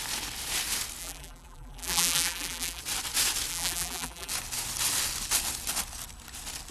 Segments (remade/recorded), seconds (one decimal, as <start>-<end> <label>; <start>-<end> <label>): 0.0-1.0 recorded; 1.0-2.8 remade; 2.8-3.5 recorded; 3.5-4.3 remade; 4.3-6.7 recorded